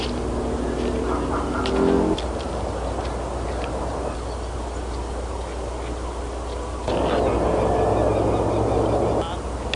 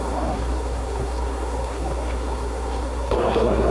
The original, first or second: first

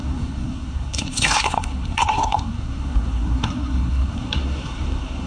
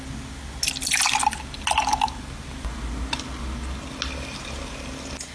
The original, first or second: second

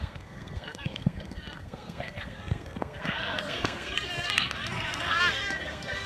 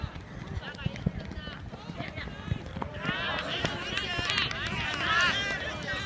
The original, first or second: second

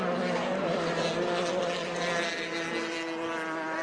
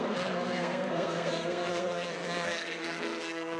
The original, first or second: first